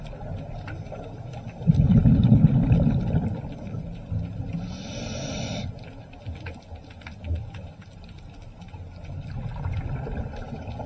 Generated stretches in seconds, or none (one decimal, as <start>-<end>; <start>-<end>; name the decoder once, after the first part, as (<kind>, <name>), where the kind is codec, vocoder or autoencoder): none